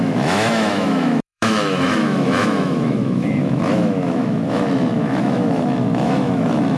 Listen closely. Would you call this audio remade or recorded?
remade